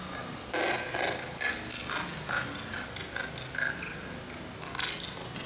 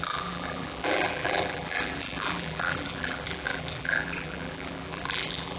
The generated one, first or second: second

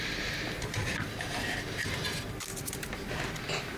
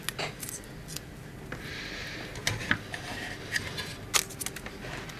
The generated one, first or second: first